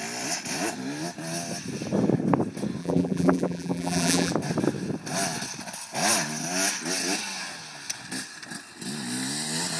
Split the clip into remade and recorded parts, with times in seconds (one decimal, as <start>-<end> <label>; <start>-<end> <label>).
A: 0.0-2.8 recorded; 2.8-4.3 remade; 4.3-9.8 recorded